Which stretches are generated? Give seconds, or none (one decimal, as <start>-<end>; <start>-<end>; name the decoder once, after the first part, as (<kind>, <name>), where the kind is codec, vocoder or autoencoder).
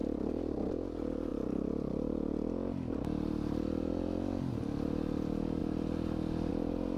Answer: none